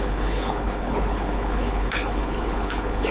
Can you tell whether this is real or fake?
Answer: fake